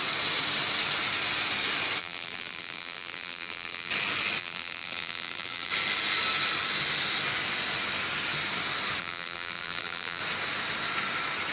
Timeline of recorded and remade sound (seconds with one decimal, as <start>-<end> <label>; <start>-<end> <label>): 0.0-2.0 recorded; 2.0-3.9 remade; 3.9-4.4 recorded; 4.4-5.7 remade; 5.7-9.0 recorded; 9.0-10.2 remade; 10.2-11.5 recorded